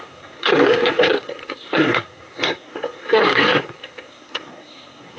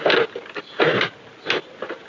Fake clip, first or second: first